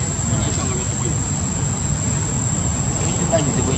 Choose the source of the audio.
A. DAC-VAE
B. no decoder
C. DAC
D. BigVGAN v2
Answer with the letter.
B